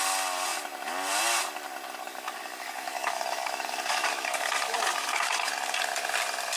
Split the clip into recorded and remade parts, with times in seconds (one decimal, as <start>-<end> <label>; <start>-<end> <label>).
0.0-2.1 recorded; 2.1-5.5 remade; 5.5-6.6 recorded